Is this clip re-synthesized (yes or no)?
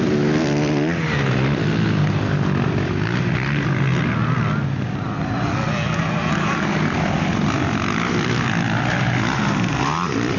no